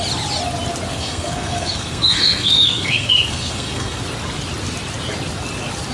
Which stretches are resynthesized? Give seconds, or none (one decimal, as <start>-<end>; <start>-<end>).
0.9-4.0